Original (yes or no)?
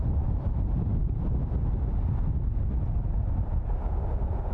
yes